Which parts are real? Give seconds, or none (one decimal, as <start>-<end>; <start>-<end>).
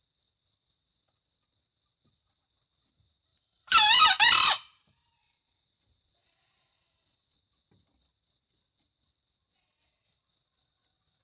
0.0-3.3; 7.4-11.2